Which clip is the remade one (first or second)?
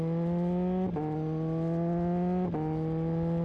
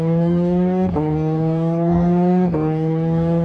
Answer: second